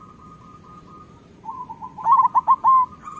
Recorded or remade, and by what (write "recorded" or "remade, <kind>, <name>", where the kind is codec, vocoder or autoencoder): recorded